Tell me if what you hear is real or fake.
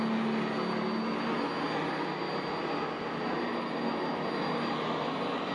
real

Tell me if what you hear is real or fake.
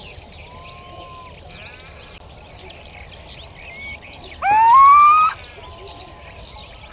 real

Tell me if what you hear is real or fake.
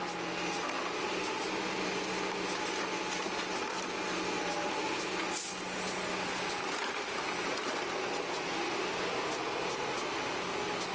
real